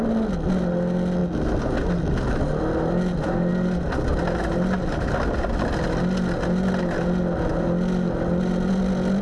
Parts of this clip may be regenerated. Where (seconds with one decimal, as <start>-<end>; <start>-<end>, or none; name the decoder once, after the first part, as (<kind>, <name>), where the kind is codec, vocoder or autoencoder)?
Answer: none